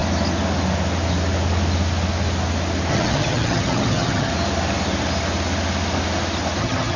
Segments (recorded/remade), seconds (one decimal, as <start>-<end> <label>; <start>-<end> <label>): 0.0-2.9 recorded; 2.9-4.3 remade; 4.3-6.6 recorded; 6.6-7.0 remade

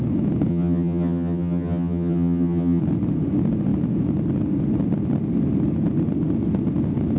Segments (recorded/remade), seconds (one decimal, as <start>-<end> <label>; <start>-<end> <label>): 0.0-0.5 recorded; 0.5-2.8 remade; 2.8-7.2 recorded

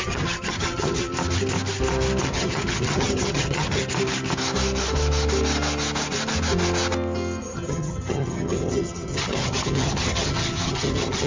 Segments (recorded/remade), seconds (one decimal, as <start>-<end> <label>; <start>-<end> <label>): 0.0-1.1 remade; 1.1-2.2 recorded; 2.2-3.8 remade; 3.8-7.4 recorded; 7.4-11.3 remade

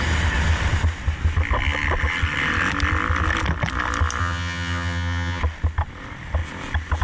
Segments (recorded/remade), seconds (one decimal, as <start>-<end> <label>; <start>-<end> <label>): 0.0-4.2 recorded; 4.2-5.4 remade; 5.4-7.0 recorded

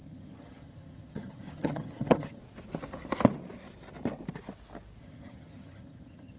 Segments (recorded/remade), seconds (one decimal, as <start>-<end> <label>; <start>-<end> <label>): 0.0-2.4 remade; 2.4-5.0 recorded; 5.0-6.4 remade

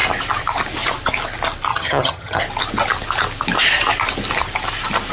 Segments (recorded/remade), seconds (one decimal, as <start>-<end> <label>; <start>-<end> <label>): 0.0-1.7 recorded; 1.7-2.4 remade; 2.4-5.1 recorded

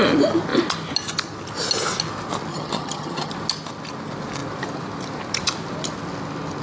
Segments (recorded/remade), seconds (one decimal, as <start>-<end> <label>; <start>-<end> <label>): 0.0-2.5 recorded; 2.5-3.3 remade; 3.3-6.6 recorded